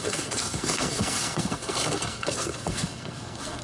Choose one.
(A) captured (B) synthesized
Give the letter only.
B